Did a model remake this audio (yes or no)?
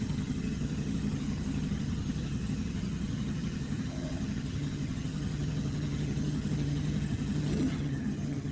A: yes